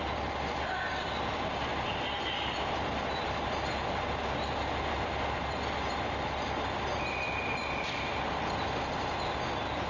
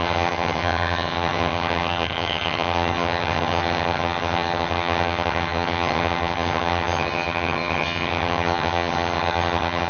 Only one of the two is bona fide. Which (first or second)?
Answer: first